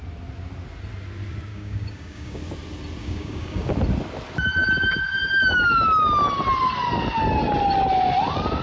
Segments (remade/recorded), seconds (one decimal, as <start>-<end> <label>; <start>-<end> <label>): 0.0-1.5 recorded; 1.5-2.4 remade; 2.4-3.0 recorded; 3.0-3.7 remade; 3.7-8.6 recorded